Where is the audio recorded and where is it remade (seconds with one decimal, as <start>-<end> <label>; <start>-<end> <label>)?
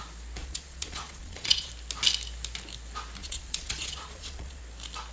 0.0-0.4 recorded; 0.4-1.7 remade; 1.7-3.2 recorded; 3.2-4.6 remade; 4.6-5.1 recorded